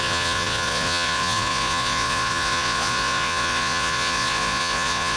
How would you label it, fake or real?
fake